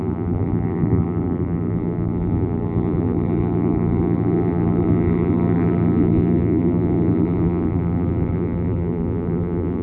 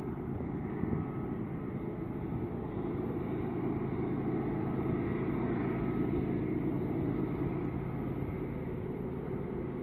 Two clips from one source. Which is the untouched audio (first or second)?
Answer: second